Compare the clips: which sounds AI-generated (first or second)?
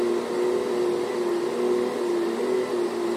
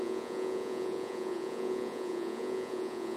second